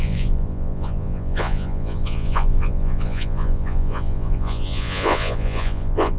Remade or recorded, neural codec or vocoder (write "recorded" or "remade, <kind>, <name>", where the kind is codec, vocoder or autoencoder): remade, vocoder, Vocos